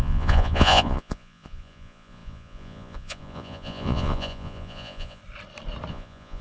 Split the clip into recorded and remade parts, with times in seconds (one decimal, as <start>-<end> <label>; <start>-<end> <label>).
0.0-5.2 remade; 5.2-5.9 recorded; 5.9-6.4 remade